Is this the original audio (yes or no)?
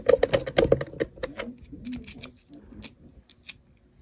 yes